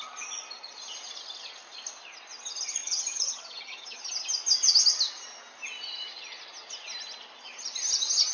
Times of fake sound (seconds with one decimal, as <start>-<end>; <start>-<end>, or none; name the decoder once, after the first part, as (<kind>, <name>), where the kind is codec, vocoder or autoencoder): 2.8-4.1 (vocoder, HiFi-GAN)